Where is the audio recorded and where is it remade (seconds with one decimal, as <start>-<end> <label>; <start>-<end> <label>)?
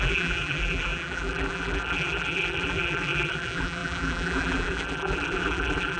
0.0-6.0 remade